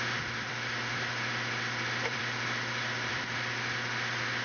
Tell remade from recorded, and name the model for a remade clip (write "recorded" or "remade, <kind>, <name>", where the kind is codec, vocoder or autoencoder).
remade, vocoder, BigVGAN v2